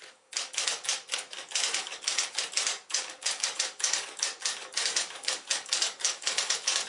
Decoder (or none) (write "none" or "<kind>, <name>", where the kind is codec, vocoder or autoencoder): codec, DAC